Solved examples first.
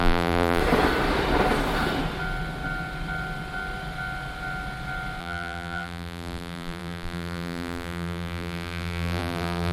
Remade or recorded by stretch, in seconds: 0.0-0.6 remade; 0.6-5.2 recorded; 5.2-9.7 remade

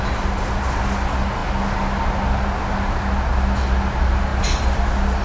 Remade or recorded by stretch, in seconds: 0.0-4.3 recorded; 4.3-5.2 remade

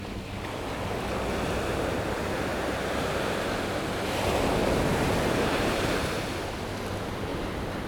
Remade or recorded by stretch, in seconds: 0.0-4.6 recorded; 4.6-6.0 remade; 6.0-7.9 recorded

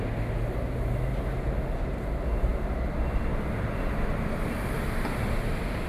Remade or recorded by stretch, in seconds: 0.0-5.9 recorded

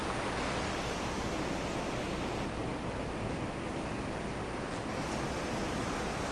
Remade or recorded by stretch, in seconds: 0.0-1.3 remade; 1.3-2.7 recorded; 2.7-4.9 remade; 4.9-6.3 recorded

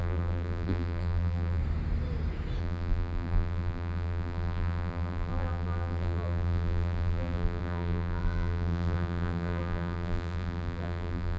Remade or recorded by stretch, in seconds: 0.0-1.6 remade; 1.6-2.6 recorded; 2.6-11.4 remade